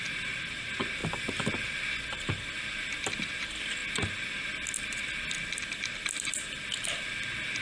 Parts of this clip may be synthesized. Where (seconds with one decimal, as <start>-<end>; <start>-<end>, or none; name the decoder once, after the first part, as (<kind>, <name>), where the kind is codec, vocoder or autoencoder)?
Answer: none